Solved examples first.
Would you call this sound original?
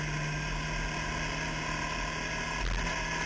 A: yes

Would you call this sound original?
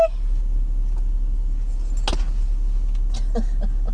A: yes